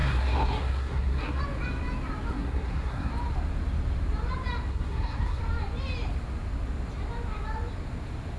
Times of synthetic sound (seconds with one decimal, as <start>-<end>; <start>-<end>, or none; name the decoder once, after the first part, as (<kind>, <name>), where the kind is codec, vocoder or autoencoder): 0.0-1.4 (codec, SNAC); 2.3-3.1; 4.7-5.4

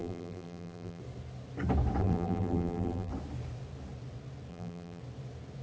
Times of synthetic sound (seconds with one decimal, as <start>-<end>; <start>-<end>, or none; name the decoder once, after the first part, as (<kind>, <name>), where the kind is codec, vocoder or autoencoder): 0.0-1.0 (vocoder, BigVGAN v2); 2.0-3.1; 4.5-5.0

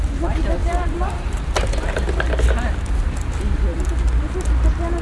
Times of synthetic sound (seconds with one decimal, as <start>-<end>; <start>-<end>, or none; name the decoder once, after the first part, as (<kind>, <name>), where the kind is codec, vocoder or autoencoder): 0.6-1.4 (vocoder, BigVGAN v2)

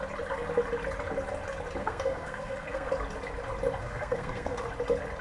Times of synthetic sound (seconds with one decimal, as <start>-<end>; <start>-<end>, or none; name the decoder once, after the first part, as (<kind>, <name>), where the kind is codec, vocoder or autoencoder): 1.8-2.9 (codec, SNAC); 3.8-4.6

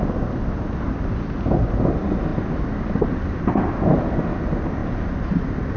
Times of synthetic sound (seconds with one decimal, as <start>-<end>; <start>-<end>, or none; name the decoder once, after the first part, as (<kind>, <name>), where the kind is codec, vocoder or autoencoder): none

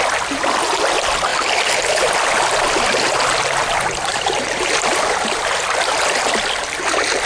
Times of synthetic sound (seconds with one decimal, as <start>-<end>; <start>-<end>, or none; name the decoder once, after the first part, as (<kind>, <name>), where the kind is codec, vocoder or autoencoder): none

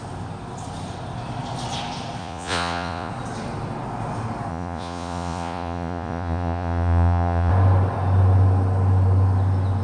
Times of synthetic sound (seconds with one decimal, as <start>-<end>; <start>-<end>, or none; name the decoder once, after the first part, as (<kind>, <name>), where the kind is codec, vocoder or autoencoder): 2.2-3.1 (vocoder, Vocos); 4.5-7.5

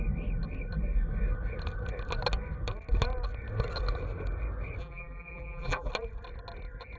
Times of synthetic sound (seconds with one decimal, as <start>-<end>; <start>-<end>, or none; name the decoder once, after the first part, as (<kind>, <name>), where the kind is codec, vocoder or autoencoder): 4.8-5.9 (vocoder, BigVGAN v2)